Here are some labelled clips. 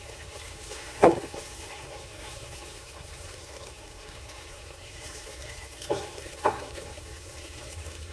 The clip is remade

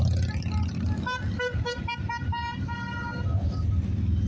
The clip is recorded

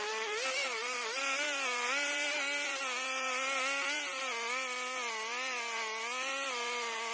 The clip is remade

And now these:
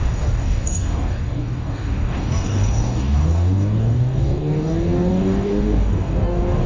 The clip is remade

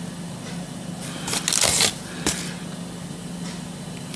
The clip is recorded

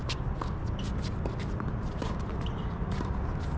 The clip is recorded